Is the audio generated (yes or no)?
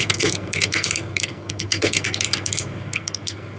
yes